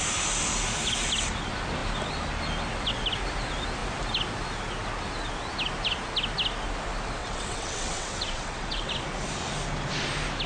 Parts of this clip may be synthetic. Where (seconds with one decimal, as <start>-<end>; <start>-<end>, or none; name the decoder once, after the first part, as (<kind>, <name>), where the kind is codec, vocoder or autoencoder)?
7.2-8.9 (vocoder, WaveNeXt)